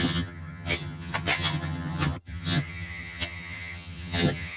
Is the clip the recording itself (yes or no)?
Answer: no